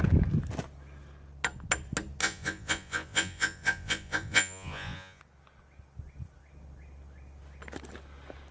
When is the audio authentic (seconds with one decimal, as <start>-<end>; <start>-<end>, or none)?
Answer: 0.0-2.2; 5.2-8.5